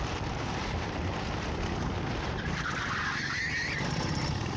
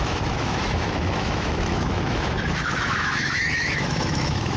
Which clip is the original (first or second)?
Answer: first